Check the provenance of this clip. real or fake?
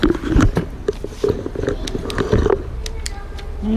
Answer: real